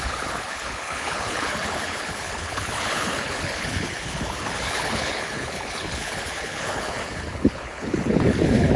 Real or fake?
fake